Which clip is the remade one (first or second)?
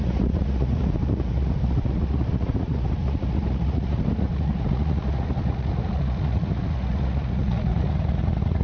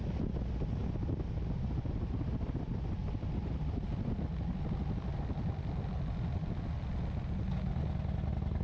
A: first